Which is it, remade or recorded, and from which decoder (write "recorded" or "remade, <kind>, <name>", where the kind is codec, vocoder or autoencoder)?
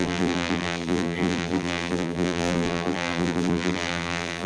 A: remade, vocoder, BigVGAN v2